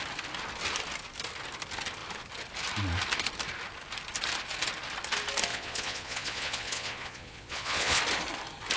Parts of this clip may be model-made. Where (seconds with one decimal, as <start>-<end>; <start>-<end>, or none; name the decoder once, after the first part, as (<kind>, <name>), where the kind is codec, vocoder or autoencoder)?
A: 5.5-8.0 (vocoder, Vocos)